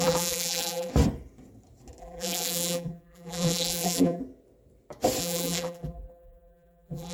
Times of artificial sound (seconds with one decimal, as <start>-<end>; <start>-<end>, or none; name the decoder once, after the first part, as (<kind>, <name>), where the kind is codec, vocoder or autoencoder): 0.0-0.9 (vocoder, BigVGAN v2); 2.0-4.2; 5.2-7.1